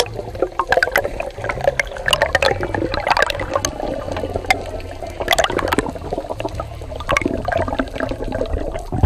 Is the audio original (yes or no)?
yes